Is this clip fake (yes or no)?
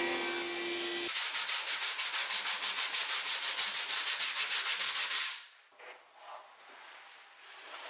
no